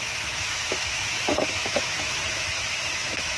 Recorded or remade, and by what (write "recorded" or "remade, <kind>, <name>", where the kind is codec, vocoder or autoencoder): remade, autoencoder, DAC-VAE